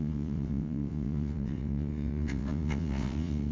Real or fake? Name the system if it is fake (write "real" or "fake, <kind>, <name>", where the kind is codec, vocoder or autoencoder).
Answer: fake, vocoder, WaveNeXt